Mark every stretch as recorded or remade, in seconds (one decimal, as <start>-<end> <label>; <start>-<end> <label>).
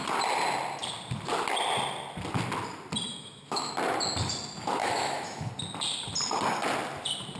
0.0-3.1 recorded; 3.1-3.7 remade; 3.7-4.8 recorded; 4.8-5.5 remade; 5.5-7.4 recorded